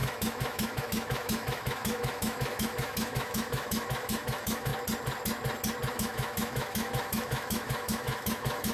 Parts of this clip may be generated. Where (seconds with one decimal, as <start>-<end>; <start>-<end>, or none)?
0.0-4.7; 5.9-8.7